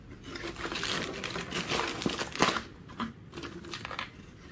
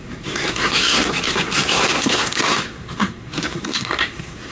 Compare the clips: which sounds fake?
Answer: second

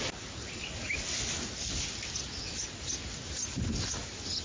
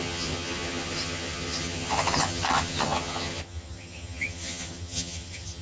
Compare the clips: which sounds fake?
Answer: second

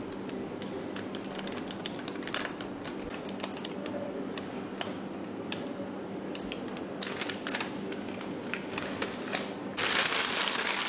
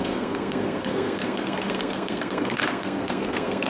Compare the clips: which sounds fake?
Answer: second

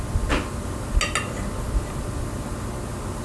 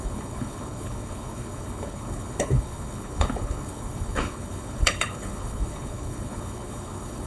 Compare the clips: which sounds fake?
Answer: second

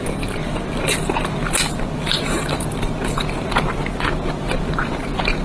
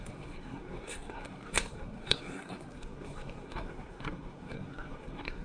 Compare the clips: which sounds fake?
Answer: second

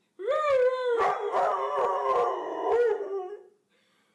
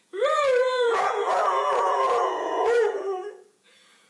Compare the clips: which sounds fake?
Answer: second